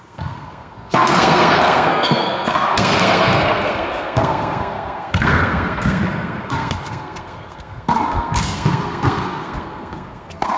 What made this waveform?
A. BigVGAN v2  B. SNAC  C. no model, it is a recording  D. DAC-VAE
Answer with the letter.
B